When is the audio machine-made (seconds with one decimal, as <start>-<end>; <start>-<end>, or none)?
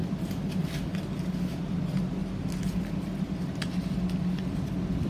0.0-1.8; 2.2-3.7